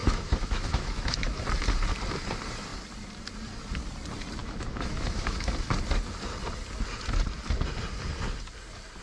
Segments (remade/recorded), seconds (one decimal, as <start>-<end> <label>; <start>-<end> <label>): 0.0-1.4 remade; 1.4-4.4 recorded; 4.4-5.5 remade; 5.5-9.0 recorded